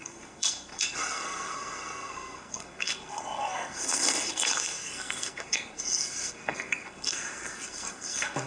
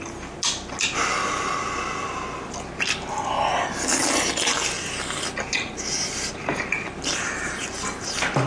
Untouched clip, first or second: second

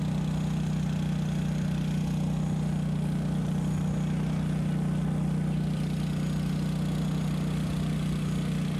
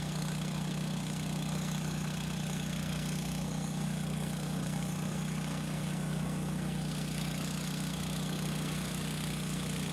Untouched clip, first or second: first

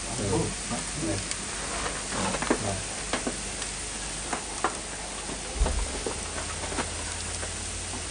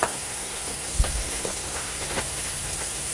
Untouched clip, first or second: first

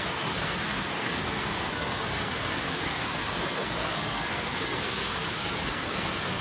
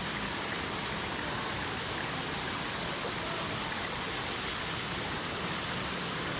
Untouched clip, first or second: second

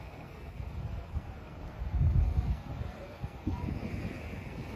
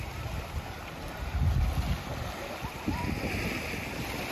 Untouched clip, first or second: second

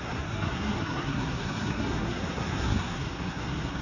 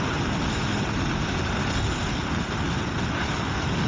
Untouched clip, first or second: second